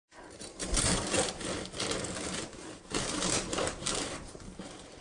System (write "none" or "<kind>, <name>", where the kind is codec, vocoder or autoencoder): vocoder, BigVGAN v2